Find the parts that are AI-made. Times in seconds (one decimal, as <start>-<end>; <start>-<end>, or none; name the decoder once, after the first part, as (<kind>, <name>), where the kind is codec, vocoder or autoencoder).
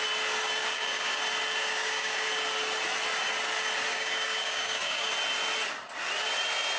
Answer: 0.6-1.2 (codec, DAC); 1.6-2.3; 3.9-5.1